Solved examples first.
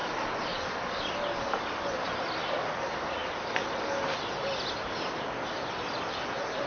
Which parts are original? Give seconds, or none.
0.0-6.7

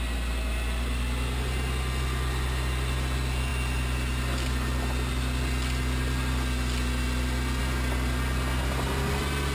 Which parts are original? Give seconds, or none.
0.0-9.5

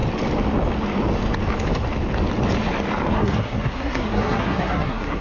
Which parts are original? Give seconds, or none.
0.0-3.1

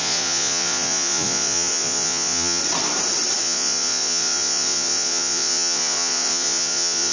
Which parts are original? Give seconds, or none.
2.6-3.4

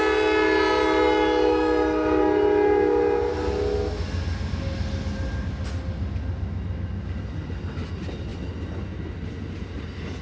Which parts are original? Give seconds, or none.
0.0-10.2